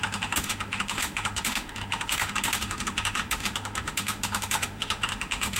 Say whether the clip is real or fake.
fake